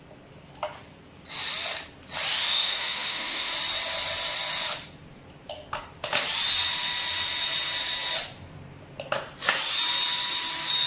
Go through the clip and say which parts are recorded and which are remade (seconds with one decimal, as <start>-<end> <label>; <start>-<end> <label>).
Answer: 0.0-2.3 recorded; 2.3-3.5 remade; 3.5-10.9 recorded